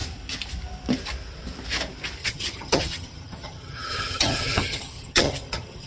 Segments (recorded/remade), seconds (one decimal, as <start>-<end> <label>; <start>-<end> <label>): 0.0-2.2 recorded; 2.2-5.9 remade

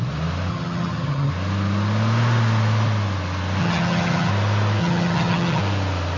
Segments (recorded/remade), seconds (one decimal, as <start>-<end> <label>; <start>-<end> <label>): 0.0-0.5 recorded; 0.5-1.3 remade; 1.3-3.6 recorded; 3.6-4.3 remade; 4.3-4.8 recorded; 4.8-5.6 remade; 5.6-6.2 recorded

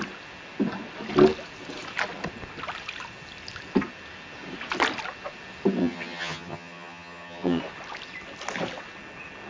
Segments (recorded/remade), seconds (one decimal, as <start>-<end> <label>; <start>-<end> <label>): 0.0-5.8 recorded; 5.8-7.6 remade; 7.6-9.5 recorded

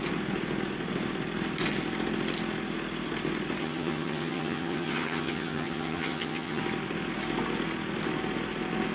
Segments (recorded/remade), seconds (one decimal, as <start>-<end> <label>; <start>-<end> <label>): 0.0-3.6 recorded; 3.6-6.6 remade; 6.6-8.9 recorded

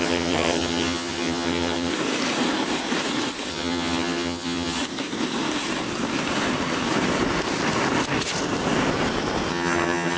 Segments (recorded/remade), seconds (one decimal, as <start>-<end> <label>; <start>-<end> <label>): 0.0-1.9 remade; 1.9-3.5 recorded; 3.5-4.8 remade; 4.8-9.5 recorded; 9.5-10.2 remade

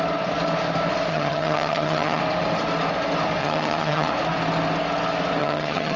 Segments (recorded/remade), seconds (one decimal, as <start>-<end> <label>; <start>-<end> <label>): 0.0-1.1 recorded; 1.1-2.2 remade; 2.2-3.4 recorded; 3.4-4.1 remade; 4.1-5.4 recorded; 5.4-6.0 remade

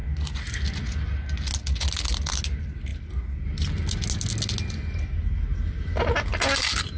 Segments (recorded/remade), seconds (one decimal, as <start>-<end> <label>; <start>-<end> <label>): 0.0-7.0 recorded

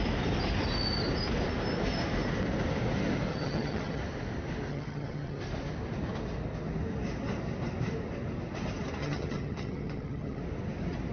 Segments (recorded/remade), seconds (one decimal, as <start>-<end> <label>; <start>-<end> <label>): 0.0-3.3 recorded; 3.3-4.0 remade; 4.0-4.7 recorded; 4.7-5.4 remade; 5.4-9.0 recorded; 9.0-10.4 remade; 10.4-11.1 recorded